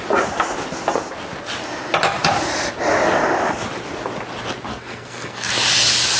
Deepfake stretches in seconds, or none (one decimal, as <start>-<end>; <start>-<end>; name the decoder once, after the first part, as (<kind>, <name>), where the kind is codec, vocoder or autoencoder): 4.7-5.5 (codec, SNAC)